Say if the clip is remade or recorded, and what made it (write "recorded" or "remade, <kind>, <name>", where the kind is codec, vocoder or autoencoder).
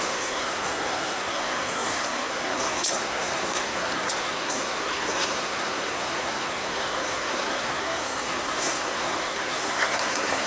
remade, codec, SNAC